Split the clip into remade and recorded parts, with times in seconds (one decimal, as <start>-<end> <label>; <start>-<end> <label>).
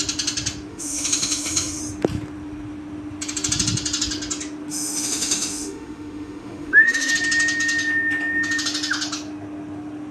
0.0-0.7 recorded; 0.7-1.8 remade; 1.8-4.7 recorded; 4.7-7.1 remade; 7.1-10.1 recorded